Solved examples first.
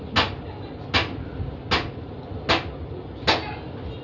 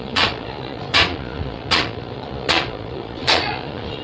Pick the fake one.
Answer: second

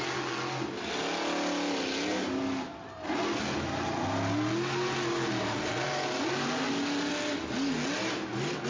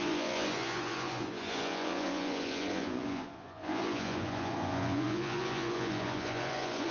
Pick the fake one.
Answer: second